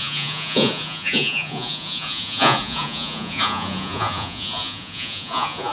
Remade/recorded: remade